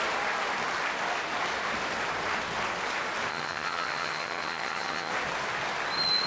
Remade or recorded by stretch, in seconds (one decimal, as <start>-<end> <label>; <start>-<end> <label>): 0.0-3.3 recorded; 3.3-5.1 remade; 5.1-6.3 recorded